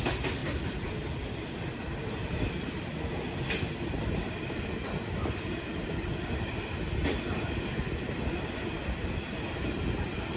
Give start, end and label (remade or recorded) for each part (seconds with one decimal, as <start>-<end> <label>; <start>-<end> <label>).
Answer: 0.0-0.4 recorded; 0.4-2.5 remade; 2.5-10.4 recorded